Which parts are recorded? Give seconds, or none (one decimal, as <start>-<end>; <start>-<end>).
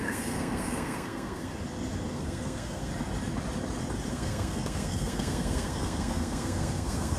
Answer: 1.5-2.1; 2.9-4.1